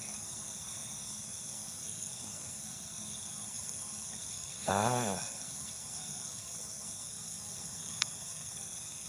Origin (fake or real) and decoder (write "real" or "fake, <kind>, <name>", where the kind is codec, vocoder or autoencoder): fake, codec, SNAC